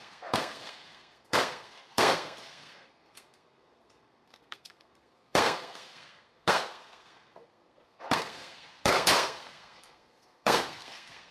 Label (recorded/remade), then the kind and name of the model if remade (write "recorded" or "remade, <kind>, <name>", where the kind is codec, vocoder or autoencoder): remade, codec, SNAC